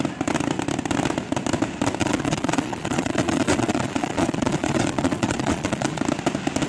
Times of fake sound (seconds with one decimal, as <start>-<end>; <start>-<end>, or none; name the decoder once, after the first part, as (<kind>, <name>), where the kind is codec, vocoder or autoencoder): 2.0-6.0 (vocoder, Vocos)